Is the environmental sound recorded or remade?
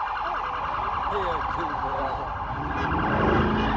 recorded